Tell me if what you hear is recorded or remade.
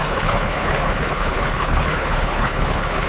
remade